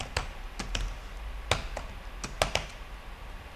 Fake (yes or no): no